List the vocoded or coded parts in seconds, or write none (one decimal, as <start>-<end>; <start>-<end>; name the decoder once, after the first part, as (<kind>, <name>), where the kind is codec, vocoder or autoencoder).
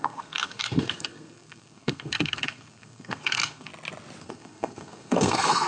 0.0-3.7 (codec, SNAC); 4.2-5.7